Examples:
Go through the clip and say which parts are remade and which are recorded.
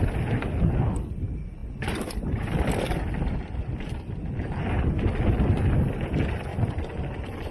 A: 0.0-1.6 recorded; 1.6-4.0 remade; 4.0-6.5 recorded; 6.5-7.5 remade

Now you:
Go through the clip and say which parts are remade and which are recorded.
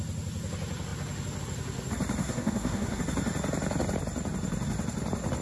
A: 0.0-2.2 recorded; 2.2-3.0 remade; 3.0-5.4 recorded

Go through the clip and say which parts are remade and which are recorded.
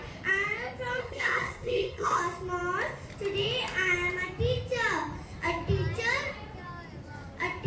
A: 0.0-1.0 recorded; 1.0-2.2 remade; 2.2-7.7 recorded